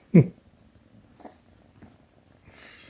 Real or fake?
real